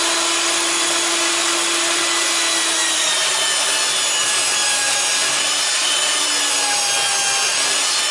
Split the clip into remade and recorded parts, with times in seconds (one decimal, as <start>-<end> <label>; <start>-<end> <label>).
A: 0.0-2.8 recorded; 2.8-3.3 remade; 3.3-4.7 recorded; 4.7-6.2 remade; 6.2-8.1 recorded